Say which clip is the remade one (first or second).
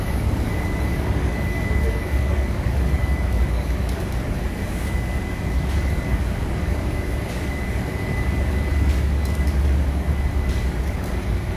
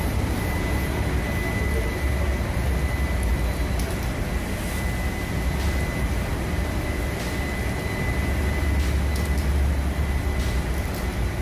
first